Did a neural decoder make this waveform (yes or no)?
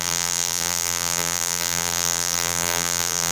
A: yes